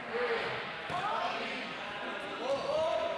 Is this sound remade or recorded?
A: recorded